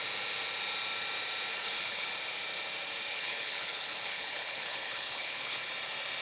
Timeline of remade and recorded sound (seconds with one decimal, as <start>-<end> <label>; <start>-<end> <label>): 0.0-1.5 recorded; 1.5-2.1 remade; 2.1-3.1 recorded; 3.1-5.7 remade; 5.7-6.2 recorded